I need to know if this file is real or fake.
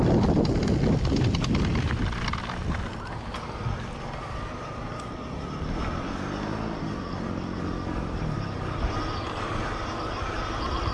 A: real